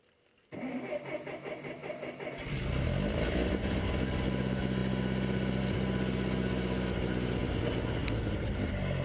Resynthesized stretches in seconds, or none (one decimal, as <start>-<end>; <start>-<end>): none